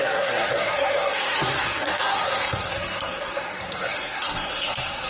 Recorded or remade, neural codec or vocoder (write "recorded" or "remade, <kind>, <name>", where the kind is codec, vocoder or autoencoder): remade, codec, SNAC